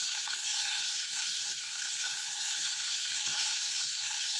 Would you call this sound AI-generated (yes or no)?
yes